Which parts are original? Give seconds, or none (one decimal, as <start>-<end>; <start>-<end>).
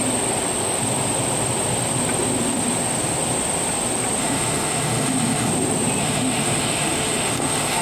0.0-4.2; 5.5-6.0